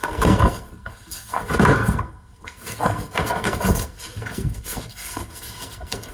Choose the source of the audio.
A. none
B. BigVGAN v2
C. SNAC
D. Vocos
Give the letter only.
C